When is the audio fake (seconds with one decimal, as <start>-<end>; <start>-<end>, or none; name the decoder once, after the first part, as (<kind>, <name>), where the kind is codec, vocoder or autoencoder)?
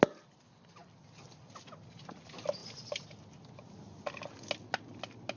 none